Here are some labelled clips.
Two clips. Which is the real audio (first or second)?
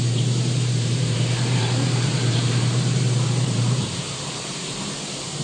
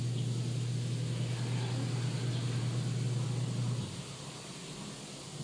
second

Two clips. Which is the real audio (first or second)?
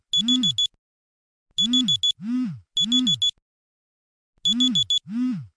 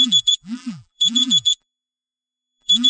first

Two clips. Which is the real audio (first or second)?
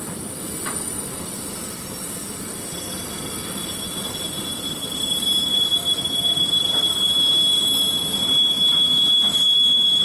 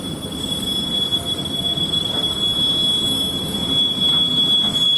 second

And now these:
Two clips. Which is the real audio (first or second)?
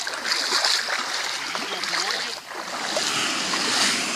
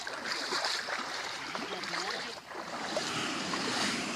first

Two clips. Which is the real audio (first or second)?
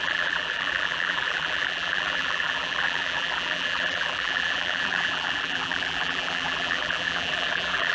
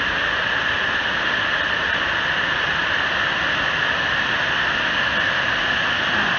second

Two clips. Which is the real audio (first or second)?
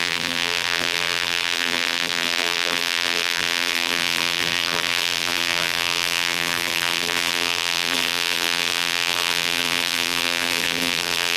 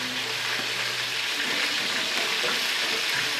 second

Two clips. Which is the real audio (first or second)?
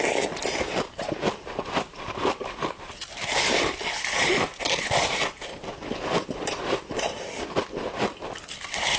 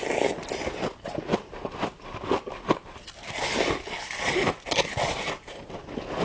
second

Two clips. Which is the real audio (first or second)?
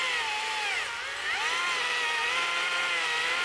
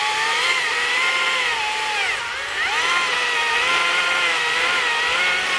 first